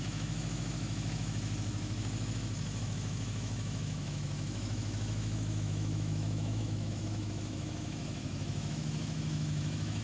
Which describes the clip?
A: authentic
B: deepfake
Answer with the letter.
B